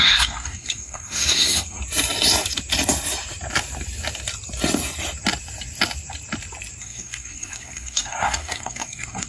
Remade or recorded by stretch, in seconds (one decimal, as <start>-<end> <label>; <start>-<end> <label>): 0.0-1.8 remade; 1.8-6.8 recorded; 6.8-9.3 remade

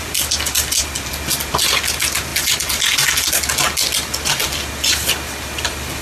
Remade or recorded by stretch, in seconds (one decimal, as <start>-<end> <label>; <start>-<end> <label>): 0.0-6.0 recorded